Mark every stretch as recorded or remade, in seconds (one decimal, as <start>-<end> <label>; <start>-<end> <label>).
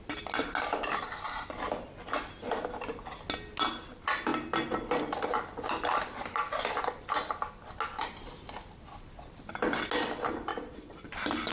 0.0-10.5 recorded; 10.5-11.1 remade; 11.1-11.5 recorded